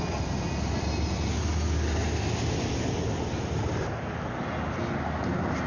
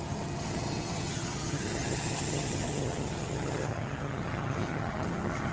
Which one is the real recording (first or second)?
first